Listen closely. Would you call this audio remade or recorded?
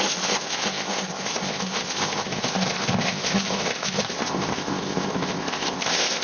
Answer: remade